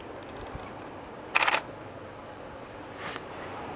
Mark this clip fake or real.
real